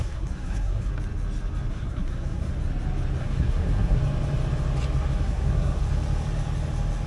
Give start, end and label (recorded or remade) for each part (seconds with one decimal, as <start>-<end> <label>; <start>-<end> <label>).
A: 0.0-0.9 remade; 0.9-1.7 recorded; 1.7-2.5 remade; 2.5-3.2 recorded; 3.2-4.0 remade; 4.0-5.2 recorded; 5.2-5.8 remade; 5.8-7.1 recorded